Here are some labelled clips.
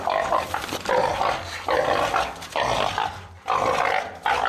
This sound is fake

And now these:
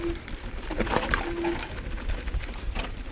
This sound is real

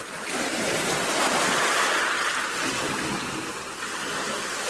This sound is real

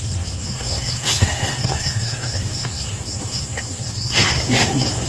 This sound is fake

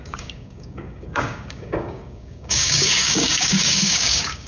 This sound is fake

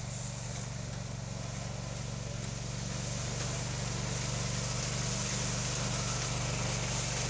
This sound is real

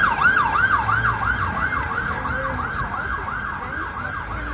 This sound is real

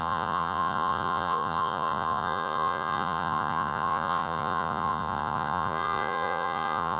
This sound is fake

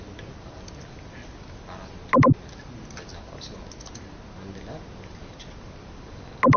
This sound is real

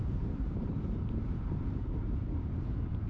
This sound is fake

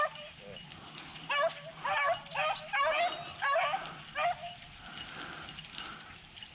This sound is real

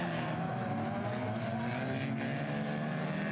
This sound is real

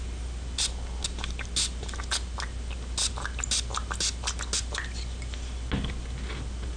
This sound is real